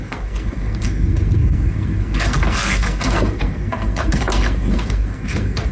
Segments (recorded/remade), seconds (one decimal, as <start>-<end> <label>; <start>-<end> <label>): 0.0-5.7 remade